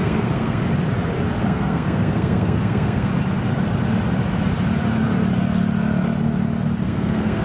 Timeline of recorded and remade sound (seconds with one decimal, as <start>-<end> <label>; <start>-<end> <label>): 0.0-0.6 remade; 0.6-1.4 recorded; 1.4-3.1 remade; 3.1-6.8 recorded; 6.8-7.4 remade

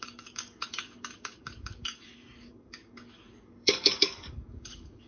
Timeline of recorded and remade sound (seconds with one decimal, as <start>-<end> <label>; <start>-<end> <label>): 0.0-5.1 remade

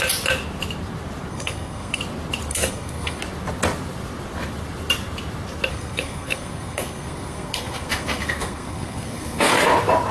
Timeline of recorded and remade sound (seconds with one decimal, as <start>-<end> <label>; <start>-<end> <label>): 0.0-1.3 recorded; 1.3-2.0 remade; 2.0-2.5 recorded; 2.5-3.2 remade; 3.2-5.7 recorded; 5.7-9.5 remade; 9.5-10.1 recorded

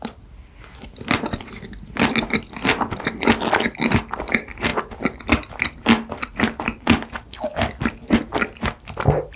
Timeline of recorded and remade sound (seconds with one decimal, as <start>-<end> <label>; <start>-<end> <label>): 0.0-9.4 recorded

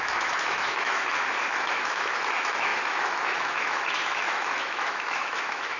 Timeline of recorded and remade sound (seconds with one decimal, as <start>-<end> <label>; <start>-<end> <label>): 0.0-5.8 remade

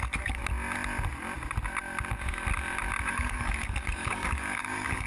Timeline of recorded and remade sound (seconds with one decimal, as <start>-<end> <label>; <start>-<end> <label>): 0.0-0.4 remade; 0.4-3.1 recorded; 3.1-5.1 remade

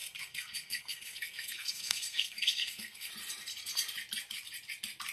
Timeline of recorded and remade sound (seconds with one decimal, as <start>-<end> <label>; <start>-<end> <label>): 0.0-3.1 remade; 3.1-5.1 recorded